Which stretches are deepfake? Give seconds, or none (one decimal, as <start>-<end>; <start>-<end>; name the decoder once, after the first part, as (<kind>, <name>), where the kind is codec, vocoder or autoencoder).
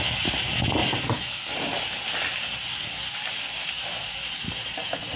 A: none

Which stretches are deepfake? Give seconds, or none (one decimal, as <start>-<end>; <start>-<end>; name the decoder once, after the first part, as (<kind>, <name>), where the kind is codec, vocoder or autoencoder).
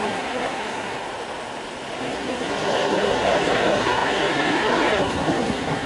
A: 0.0-1.0 (codec, SNAC); 2.0-5.9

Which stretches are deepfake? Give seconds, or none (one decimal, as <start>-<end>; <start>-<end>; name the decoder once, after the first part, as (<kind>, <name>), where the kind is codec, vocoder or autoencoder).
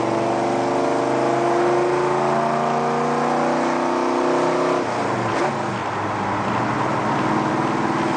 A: none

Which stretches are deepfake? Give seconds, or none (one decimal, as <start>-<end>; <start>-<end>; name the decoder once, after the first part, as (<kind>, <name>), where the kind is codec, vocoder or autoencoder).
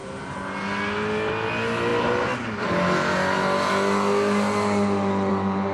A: none